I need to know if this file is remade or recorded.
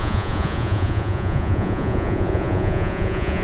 remade